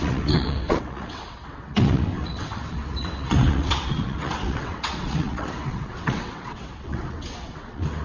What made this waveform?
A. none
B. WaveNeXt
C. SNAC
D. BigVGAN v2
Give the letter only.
B